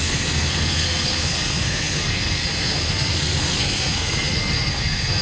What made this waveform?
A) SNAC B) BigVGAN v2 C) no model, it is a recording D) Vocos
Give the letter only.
A